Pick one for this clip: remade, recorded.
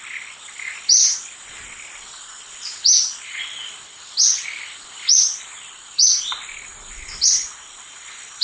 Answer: recorded